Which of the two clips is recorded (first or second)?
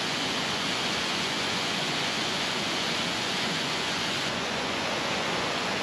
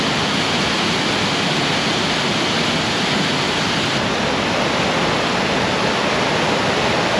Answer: second